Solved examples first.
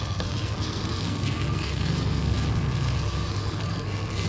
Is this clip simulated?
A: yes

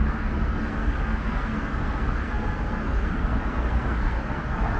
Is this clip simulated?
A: yes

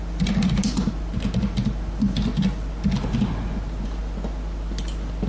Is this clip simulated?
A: no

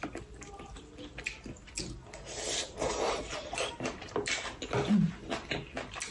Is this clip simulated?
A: no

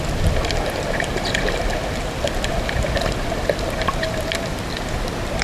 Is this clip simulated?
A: no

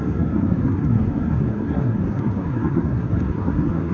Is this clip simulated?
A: yes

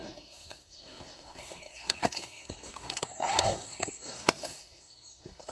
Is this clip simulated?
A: yes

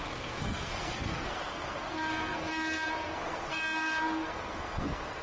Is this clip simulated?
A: yes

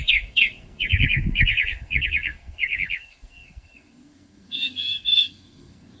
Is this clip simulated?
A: yes